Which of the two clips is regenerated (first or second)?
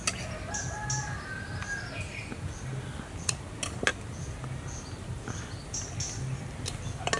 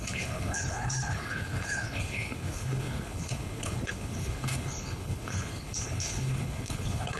second